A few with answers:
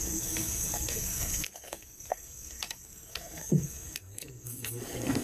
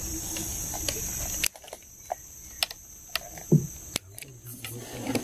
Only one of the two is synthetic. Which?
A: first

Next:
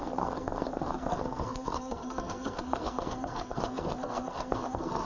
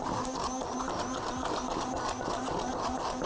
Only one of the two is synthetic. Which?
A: first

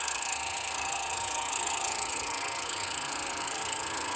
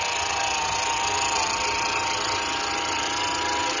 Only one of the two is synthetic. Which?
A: first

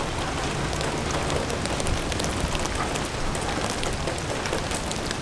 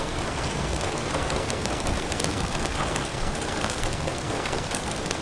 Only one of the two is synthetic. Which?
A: second